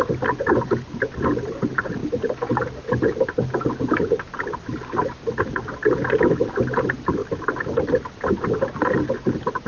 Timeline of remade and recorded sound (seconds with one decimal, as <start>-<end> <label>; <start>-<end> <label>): 0.0-9.7 recorded